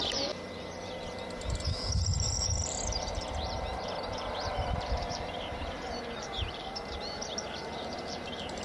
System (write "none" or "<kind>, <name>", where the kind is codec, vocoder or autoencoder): vocoder, BigVGAN v2